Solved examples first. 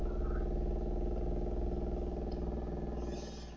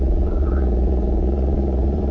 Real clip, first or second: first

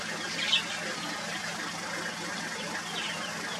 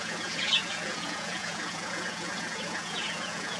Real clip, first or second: first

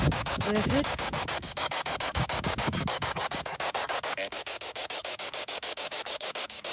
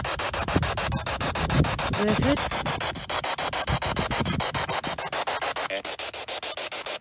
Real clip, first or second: second